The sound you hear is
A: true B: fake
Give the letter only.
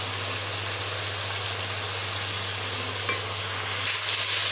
A